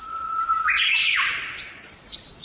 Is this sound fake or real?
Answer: fake